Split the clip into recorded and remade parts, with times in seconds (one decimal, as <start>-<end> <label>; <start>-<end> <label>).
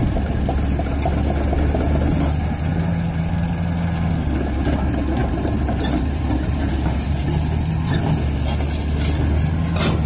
0.0-5.2 recorded; 5.2-7.9 remade; 7.9-10.1 recorded